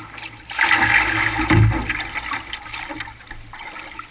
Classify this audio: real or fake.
real